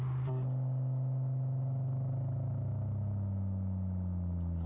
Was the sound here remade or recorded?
recorded